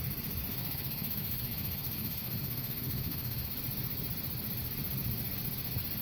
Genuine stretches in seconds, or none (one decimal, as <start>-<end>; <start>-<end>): 0.0-0.5; 3.5-6.0